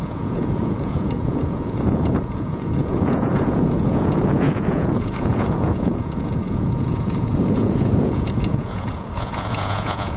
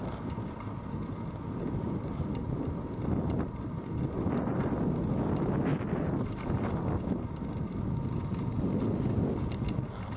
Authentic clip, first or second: second